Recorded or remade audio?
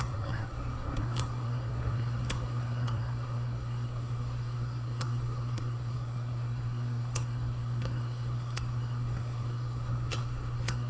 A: remade